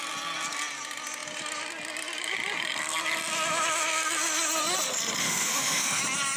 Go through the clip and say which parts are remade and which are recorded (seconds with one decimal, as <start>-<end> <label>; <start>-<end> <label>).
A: 0.0-5.2 recorded; 5.2-6.0 remade; 6.0-6.4 recorded